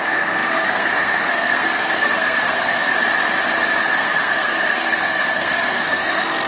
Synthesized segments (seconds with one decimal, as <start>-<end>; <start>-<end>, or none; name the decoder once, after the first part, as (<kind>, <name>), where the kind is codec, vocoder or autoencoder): 0.0-2.9 (codec, SNAC); 3.8-6.5